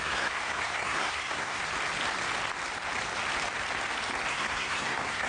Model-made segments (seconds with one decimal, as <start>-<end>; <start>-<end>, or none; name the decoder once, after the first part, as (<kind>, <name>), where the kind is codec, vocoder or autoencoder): 0.0-1.6 (codec, SNAC); 4.3-5.3